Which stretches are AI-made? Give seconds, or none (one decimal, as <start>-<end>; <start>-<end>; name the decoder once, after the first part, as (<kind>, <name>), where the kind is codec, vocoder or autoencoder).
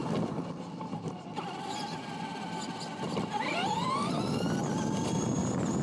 none